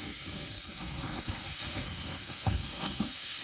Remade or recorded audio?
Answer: remade